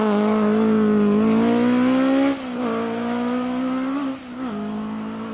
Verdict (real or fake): real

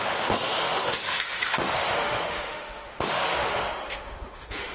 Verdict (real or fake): fake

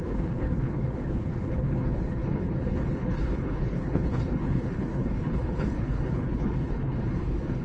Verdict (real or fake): fake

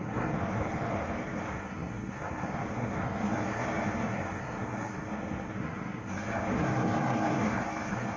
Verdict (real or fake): fake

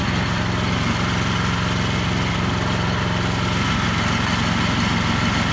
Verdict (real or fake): real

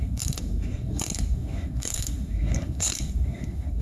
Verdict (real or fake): fake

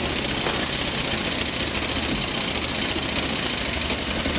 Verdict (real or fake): real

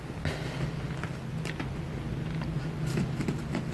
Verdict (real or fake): real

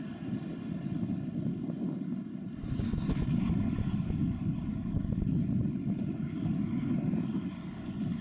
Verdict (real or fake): real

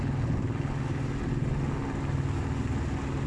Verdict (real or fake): real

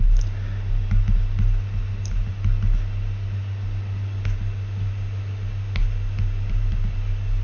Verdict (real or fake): real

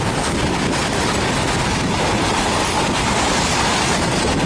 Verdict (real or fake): real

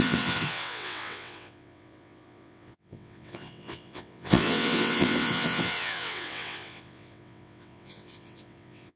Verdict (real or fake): fake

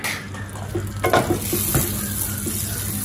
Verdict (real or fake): real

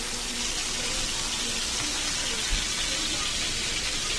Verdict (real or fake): real